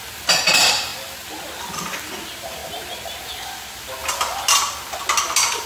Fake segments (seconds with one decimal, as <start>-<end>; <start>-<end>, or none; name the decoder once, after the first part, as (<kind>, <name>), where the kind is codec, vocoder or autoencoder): none